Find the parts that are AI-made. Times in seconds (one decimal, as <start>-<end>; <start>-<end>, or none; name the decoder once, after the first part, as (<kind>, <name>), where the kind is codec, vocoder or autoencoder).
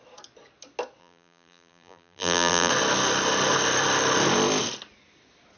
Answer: 1.0-2.7 (vocoder, BigVGAN v2)